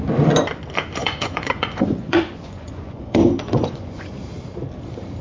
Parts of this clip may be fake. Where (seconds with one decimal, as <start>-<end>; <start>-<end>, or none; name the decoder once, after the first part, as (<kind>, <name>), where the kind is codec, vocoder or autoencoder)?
1.0-4.1 (vocoder, Vocos)